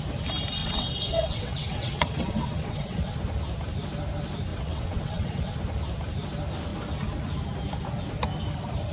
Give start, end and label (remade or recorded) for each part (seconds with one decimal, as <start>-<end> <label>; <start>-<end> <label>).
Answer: 0.0-0.6 recorded; 0.6-3.0 remade; 3.0-4.5 recorded; 4.5-5.4 remade; 5.4-8.9 recorded